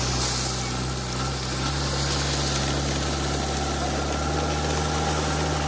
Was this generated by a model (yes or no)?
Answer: no